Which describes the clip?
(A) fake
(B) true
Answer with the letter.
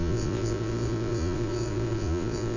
A